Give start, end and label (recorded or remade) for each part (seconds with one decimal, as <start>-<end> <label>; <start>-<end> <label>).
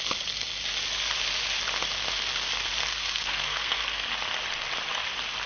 0.0-2.9 recorded; 2.9-4.0 remade; 4.0-5.5 recorded